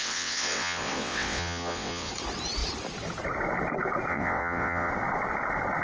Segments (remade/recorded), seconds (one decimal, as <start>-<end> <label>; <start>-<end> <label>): 0.0-2.1 remade; 2.1-4.1 recorded; 4.1-4.9 remade; 4.9-5.8 recorded